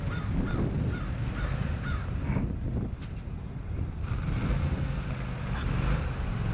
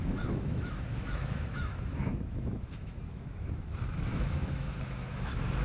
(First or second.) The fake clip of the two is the second